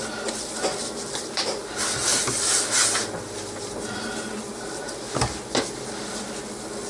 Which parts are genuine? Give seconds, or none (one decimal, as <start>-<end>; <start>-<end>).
0.0-6.9